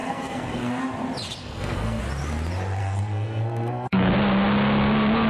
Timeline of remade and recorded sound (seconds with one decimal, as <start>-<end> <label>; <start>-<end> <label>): 0.0-0.8 remade; 0.8-1.4 recorded; 1.4-2.0 remade; 2.0-2.8 recorded; 2.8-4.1 remade; 4.1-5.3 recorded